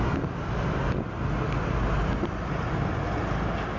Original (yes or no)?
yes